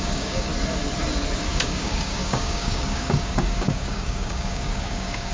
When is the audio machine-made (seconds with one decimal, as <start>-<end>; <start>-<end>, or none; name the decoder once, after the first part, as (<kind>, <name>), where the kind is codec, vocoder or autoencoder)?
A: 0.0-0.5 (codec, DAC); 1.4-5.3